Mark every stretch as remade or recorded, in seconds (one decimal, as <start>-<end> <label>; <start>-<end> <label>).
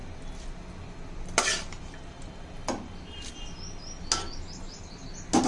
0.0-5.5 recorded